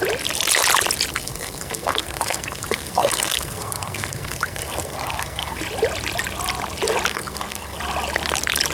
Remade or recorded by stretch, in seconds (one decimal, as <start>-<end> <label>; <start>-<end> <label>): 0.0-1.1 recorded; 1.1-5.6 remade; 5.6-7.1 recorded; 7.1-7.8 remade; 7.8-8.7 recorded

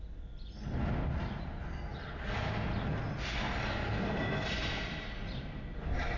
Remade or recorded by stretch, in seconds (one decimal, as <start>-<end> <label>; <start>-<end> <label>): 0.0-6.2 recorded

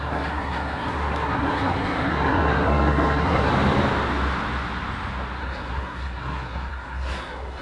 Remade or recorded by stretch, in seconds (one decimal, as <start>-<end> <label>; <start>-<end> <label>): 0.0-3.5 remade; 3.5-5.4 recorded; 5.4-7.6 remade

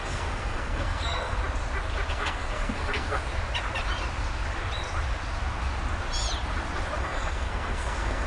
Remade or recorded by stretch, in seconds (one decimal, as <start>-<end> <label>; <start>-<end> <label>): 0.0-1.4 remade; 1.4-2.1 recorded; 2.1-3.2 remade; 3.2-7.0 recorded; 7.0-8.3 remade